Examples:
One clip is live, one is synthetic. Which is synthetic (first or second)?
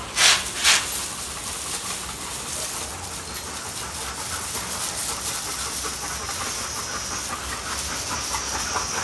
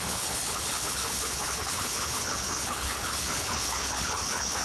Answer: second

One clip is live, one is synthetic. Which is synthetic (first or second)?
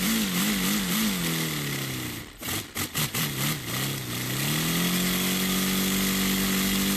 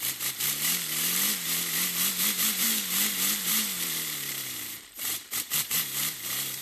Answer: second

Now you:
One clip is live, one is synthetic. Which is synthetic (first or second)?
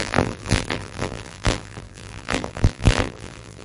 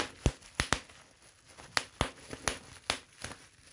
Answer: first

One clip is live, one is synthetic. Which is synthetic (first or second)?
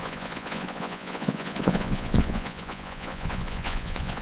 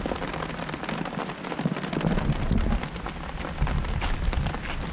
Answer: first